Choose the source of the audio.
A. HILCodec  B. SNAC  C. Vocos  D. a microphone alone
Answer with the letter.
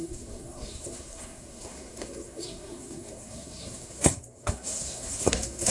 B